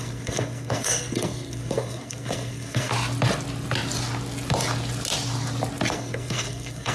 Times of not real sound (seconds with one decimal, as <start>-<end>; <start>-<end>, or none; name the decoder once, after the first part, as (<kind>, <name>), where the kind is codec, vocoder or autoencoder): 0.0-2.9 (codec, SNAC); 5.9-6.9